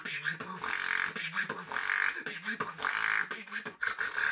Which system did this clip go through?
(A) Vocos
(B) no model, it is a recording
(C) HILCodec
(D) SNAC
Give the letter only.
B